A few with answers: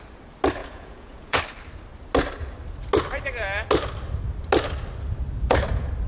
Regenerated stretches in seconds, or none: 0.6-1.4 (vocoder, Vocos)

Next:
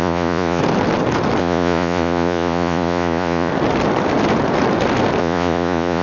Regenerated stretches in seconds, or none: 0.0-0.6 (vocoder, Vocos); 1.4-3.5; 5.2-6.0

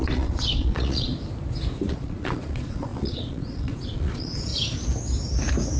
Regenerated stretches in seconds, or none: 0.0-1.1 (vocoder, Vocos); 1.9-4.5

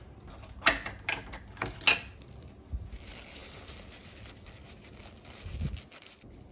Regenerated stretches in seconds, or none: none

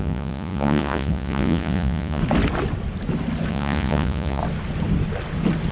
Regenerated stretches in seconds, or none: 0.0-2.2 (vocoder, Vocos); 3.5-4.4